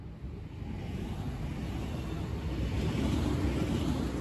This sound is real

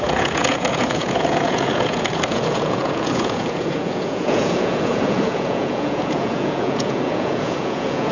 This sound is fake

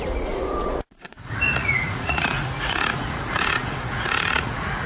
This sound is fake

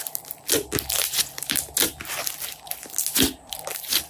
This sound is real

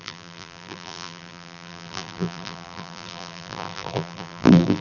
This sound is fake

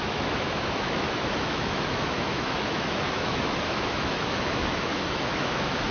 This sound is fake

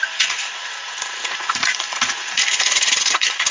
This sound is fake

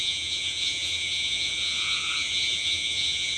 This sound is fake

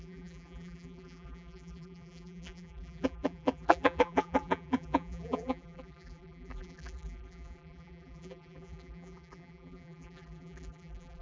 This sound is fake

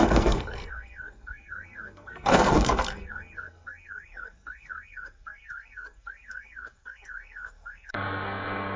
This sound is fake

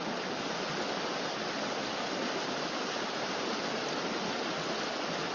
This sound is real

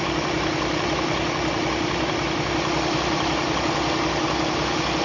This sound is real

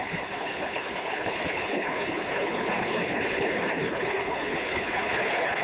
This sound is fake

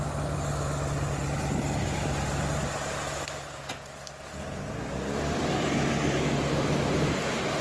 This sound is real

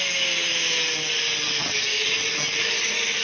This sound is real